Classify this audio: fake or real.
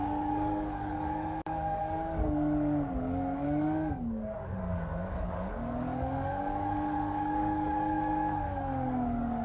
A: fake